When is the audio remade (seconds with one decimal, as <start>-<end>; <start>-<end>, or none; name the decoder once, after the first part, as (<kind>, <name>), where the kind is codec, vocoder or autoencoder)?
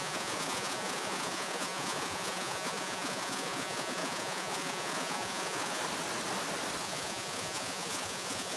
0.0-5.8 (vocoder, Vocos); 6.8-8.6